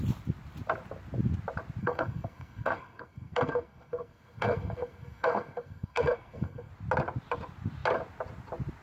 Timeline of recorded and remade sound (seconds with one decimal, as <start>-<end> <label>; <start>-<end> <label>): 0.0-1.8 recorded; 1.8-6.7 remade; 6.7-8.8 recorded